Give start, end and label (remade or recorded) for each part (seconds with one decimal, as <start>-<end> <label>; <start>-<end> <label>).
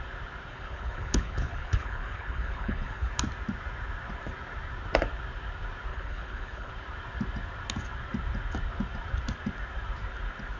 0.0-0.5 recorded; 0.5-3.1 remade; 3.1-5.9 recorded; 5.9-6.7 remade; 6.7-10.6 recorded